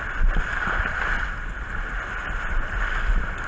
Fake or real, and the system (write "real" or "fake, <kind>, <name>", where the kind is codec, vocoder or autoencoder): real